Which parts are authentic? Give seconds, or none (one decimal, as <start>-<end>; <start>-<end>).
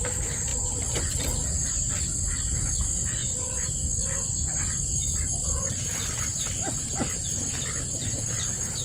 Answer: 0.0-0.5; 1.7-3.2; 7.5-8.8